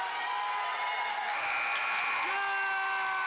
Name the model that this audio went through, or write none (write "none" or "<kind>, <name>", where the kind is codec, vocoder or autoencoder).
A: none